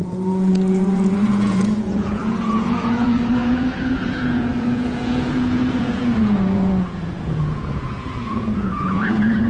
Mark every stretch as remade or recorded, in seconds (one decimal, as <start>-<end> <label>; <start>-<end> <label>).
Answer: 0.0-9.5 remade